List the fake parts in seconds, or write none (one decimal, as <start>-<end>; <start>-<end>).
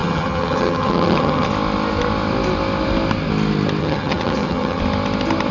0.0-1.5; 3.8-4.8